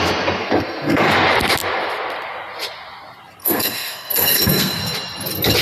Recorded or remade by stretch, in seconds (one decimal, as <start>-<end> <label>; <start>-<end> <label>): 0.0-0.4 recorded; 0.4-1.1 remade; 1.1-3.4 recorded; 3.4-4.8 remade; 4.8-5.6 recorded